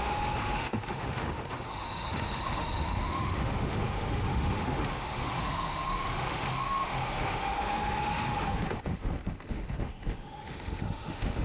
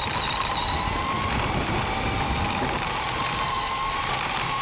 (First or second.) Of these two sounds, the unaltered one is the second